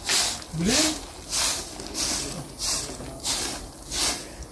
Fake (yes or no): no